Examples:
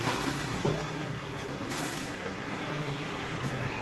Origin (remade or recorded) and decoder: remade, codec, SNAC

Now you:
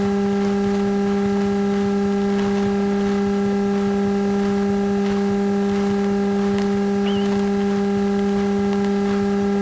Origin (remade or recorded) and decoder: recorded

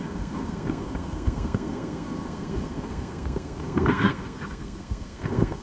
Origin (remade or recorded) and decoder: remade, codec, SNAC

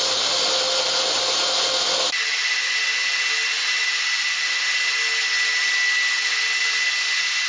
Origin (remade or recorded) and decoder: recorded